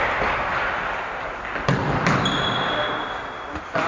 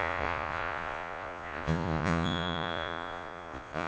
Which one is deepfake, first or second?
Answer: second